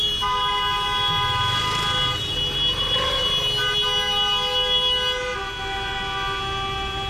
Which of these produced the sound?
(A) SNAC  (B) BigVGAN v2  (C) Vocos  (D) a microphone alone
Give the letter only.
D